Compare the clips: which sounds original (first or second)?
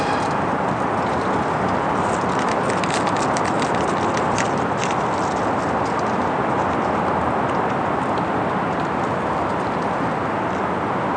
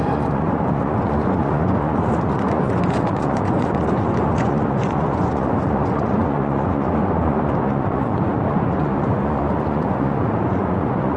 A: first